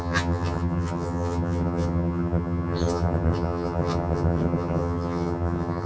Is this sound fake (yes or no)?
yes